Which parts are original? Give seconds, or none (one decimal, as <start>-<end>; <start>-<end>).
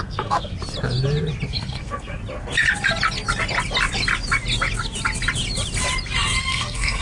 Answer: 0.5-1.5; 2.2-6.4